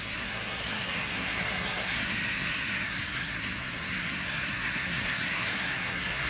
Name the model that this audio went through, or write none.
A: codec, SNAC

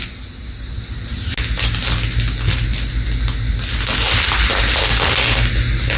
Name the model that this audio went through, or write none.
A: none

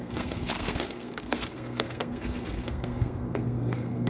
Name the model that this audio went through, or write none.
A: codec, SNAC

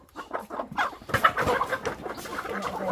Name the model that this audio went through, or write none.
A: none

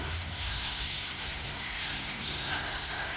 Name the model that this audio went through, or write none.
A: codec, SNAC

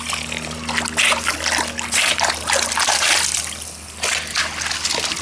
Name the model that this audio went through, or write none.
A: none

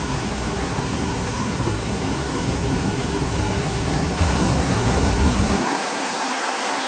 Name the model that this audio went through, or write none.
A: codec, SNAC